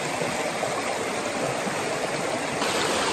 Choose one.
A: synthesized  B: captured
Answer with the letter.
B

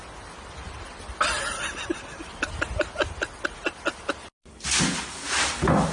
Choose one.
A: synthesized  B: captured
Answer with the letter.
B